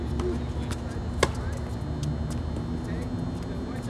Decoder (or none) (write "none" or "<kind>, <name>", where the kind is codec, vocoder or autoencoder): none